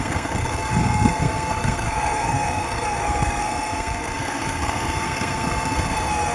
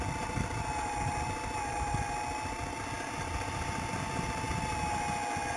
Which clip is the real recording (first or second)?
second